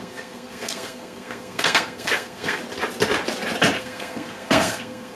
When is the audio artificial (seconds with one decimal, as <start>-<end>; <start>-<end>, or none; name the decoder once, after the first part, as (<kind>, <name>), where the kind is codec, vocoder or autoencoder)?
0.0-2.6 (codec, SNAC); 3.8-5.1